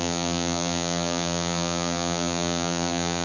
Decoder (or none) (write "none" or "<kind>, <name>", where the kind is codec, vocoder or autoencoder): vocoder, BigVGAN v2